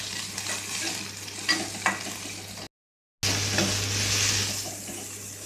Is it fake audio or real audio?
real